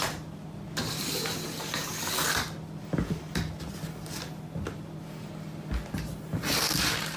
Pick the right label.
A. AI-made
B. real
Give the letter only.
B